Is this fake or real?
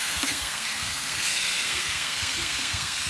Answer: fake